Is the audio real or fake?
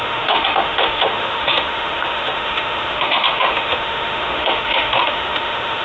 fake